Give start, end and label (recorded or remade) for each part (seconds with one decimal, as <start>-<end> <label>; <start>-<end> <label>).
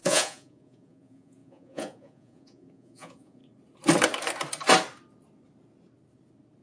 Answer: 0.0-3.4 remade; 3.4-6.6 recorded